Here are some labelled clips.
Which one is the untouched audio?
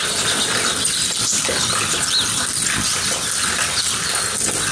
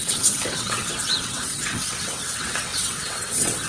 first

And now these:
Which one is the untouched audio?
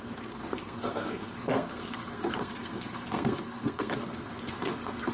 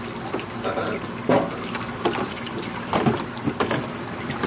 second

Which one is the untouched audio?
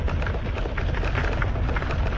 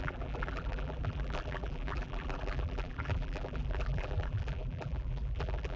first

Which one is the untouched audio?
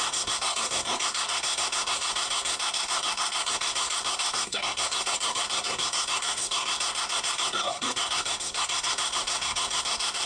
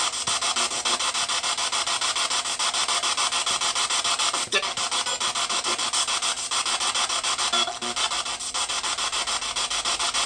second